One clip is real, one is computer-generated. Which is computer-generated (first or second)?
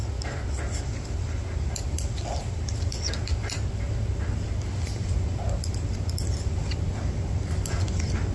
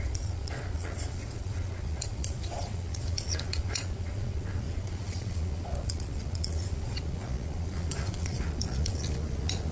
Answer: second